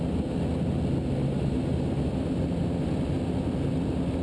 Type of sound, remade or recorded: recorded